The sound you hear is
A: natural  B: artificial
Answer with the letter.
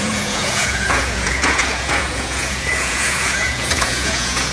B